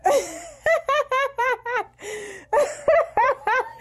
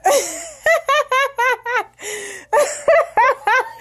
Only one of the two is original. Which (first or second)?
second